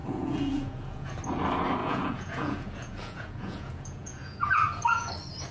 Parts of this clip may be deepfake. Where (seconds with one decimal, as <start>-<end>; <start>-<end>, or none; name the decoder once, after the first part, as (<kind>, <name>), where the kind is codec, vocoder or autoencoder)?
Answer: 0.0-1.1 (vocoder, Vocos); 1.8-5.1